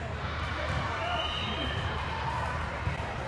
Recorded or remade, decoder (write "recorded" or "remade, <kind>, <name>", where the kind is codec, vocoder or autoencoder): remade, vocoder, BigVGAN v2